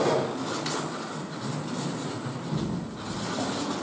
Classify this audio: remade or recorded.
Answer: recorded